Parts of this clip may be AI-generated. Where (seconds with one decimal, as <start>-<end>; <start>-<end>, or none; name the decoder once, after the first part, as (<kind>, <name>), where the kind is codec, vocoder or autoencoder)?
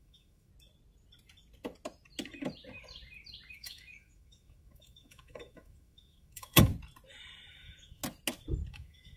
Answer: 0.0-0.5 (autoencoder, DAC-VAE); 3.5-6.7; 7.5-8.0; 8.7-9.2